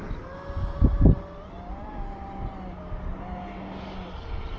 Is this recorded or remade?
recorded